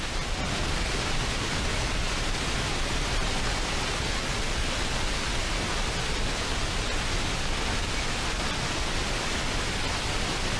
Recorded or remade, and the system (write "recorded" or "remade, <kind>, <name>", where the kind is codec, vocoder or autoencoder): recorded